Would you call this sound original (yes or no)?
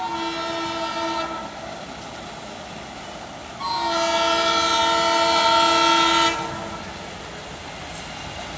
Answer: yes